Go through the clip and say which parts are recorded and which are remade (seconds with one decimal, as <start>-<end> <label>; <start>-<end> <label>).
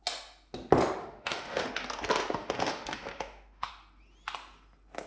0.0-1.0 recorded; 1.0-1.7 remade; 1.7-2.4 recorded; 2.4-3.7 remade; 3.7-5.1 recorded